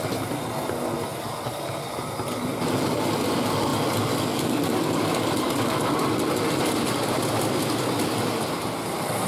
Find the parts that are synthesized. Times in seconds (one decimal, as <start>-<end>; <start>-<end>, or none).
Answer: none